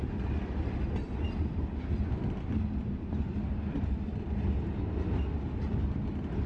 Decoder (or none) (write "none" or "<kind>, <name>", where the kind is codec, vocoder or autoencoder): none